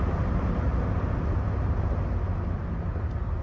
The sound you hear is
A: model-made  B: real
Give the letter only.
B